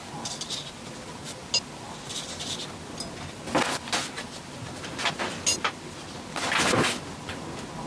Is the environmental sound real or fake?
real